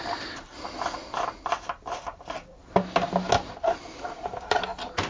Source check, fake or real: real